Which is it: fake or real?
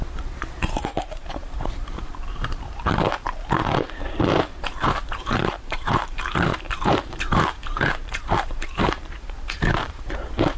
fake